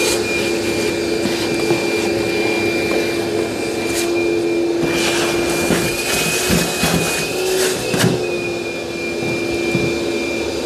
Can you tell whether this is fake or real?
real